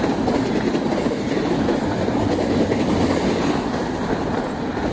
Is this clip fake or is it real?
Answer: real